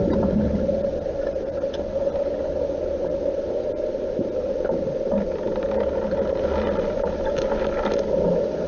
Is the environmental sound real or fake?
real